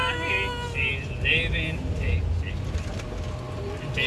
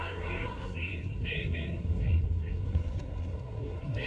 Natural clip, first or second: first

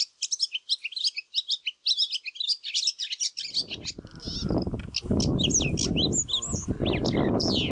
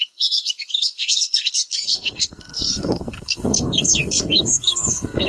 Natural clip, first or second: first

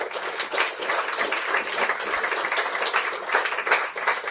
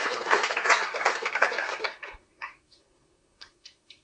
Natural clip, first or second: first